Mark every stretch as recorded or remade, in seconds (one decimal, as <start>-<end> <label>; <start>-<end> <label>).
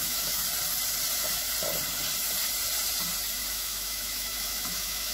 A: 0.0-0.4 remade; 0.4-3.5 recorded; 3.5-5.1 remade